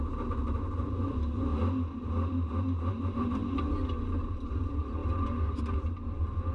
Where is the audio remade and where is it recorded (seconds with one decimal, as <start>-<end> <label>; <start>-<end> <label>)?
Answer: 0.0-3.4 remade; 3.4-4.2 recorded; 4.2-6.5 remade